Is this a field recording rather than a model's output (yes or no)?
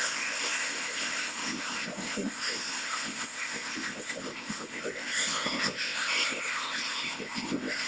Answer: no